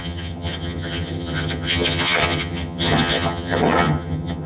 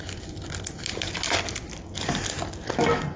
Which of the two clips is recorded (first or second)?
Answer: second